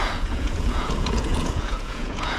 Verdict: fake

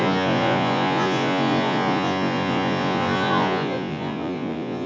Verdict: fake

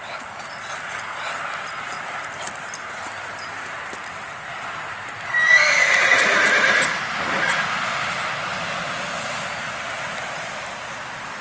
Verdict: real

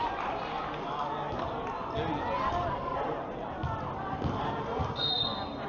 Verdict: real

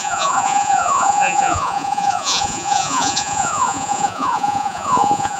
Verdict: fake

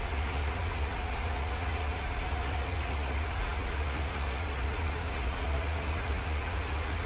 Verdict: fake